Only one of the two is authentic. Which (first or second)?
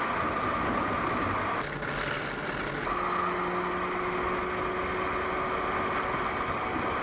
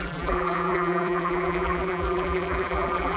first